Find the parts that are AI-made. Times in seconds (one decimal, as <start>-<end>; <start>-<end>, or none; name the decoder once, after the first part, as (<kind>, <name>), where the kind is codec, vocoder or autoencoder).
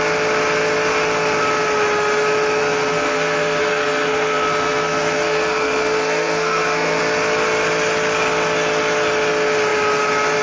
2.6-7.0 (codec, SNAC)